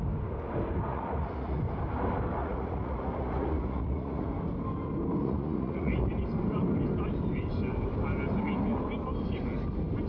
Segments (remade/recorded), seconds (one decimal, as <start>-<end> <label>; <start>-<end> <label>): 0.0-0.9 recorded; 0.9-1.6 remade; 1.6-2.4 recorded; 2.4-4.3 remade; 4.3-5.2 recorded; 5.2-6.1 remade; 6.1-10.1 recorded